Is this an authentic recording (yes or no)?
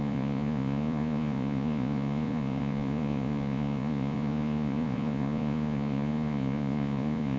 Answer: no